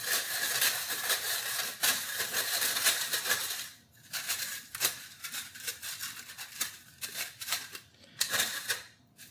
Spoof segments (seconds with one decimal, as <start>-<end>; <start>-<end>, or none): 0.0-5.7; 6.5-9.3